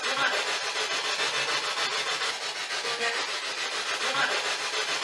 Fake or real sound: real